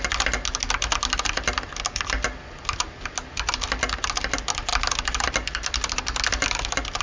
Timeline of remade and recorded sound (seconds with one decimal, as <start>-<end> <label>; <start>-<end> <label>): 0.0-7.0 recorded